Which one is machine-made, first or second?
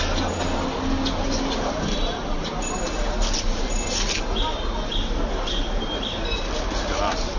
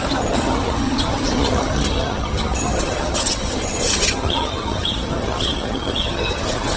second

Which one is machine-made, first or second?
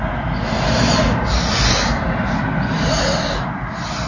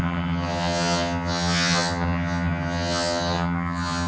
second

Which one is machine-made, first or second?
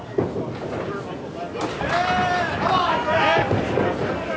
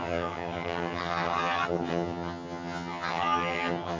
second